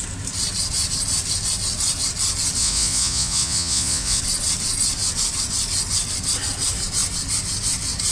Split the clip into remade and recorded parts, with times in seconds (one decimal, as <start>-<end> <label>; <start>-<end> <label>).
0.0-2.6 recorded; 2.6-4.2 remade; 4.2-8.1 recorded